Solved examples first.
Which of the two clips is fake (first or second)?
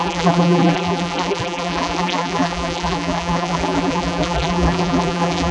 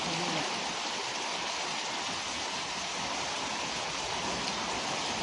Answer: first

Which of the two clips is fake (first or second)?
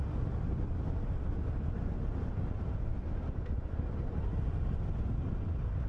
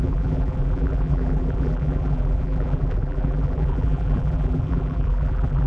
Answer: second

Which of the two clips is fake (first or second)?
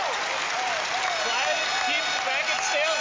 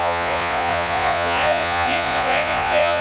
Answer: second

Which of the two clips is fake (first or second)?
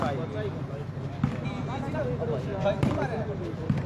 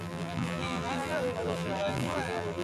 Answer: second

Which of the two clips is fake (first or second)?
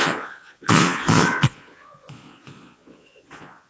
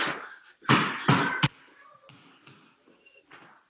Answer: first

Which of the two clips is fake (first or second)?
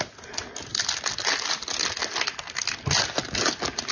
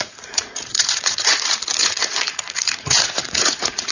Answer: second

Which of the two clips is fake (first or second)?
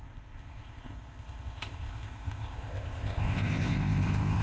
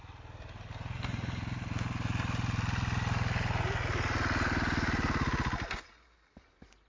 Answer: first